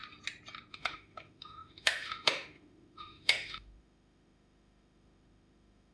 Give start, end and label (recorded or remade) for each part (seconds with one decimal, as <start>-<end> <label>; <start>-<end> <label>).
0.0-0.7 recorded; 0.7-5.9 remade